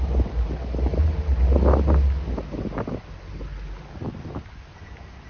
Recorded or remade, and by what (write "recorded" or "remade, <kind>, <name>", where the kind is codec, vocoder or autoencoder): recorded